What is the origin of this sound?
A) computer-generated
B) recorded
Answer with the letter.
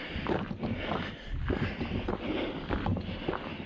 B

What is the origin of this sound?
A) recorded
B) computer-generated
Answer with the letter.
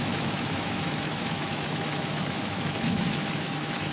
B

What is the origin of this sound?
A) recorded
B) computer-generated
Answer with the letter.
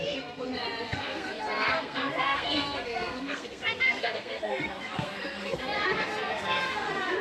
B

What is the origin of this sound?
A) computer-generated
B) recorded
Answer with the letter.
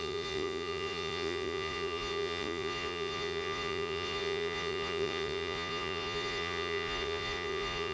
A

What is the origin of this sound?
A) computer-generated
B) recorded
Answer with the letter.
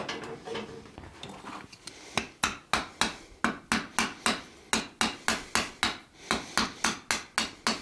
B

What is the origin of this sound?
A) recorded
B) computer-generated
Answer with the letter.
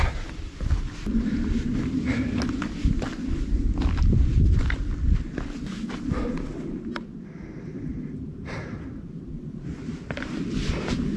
B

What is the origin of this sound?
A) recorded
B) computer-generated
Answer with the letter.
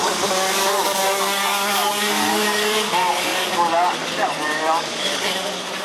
B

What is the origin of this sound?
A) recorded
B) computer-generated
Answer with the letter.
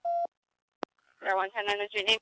A